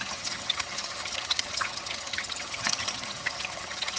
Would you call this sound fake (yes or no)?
yes